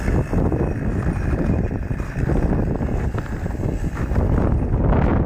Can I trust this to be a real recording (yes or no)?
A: yes